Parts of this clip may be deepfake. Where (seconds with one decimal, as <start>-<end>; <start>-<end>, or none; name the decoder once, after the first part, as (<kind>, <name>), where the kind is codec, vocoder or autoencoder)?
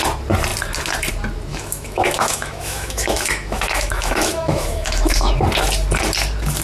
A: 1.5-5.3 (autoencoder, DAC-VAE)